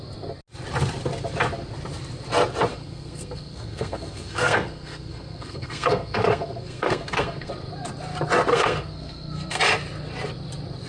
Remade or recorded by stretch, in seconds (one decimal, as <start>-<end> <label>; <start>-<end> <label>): 0.0-2.7 recorded; 2.7-7.5 remade; 7.5-8.5 recorded; 8.5-9.6 remade; 9.6-10.9 recorded